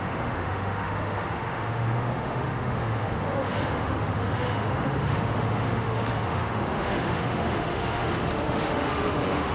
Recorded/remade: remade